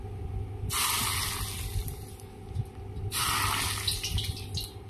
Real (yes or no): yes